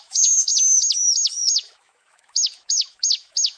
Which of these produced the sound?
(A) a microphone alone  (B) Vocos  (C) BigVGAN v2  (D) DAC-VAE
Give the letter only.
D